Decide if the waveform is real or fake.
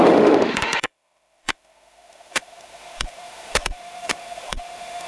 fake